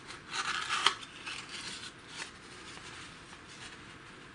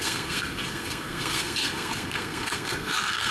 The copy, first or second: second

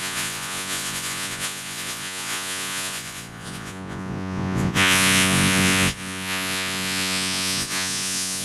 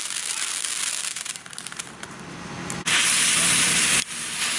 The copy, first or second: first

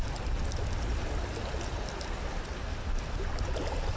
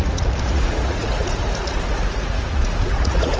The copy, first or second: second